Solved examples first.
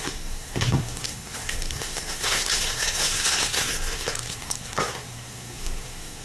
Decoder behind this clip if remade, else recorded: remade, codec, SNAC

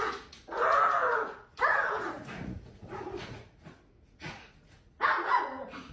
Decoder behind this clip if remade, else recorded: remade, vocoder, Vocos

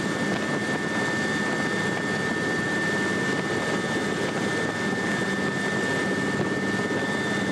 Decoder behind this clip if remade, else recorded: recorded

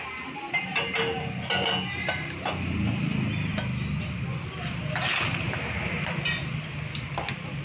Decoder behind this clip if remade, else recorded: recorded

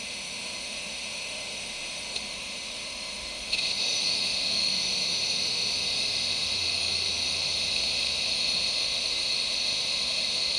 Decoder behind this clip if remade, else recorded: remade, autoencoder, DAC-VAE